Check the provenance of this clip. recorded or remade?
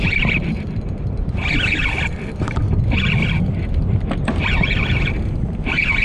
recorded